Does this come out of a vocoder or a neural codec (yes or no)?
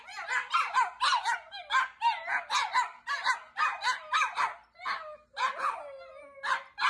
no